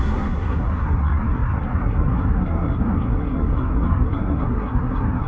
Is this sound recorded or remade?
remade